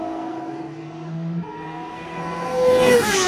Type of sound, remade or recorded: remade